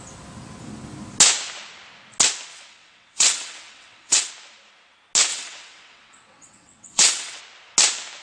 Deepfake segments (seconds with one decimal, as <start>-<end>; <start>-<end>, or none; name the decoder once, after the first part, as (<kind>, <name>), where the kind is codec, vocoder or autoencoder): 2.5-4.3 (vocoder, WaveNeXt); 5.3-7.4